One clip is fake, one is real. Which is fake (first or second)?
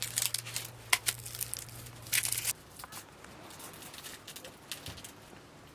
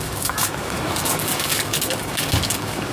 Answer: second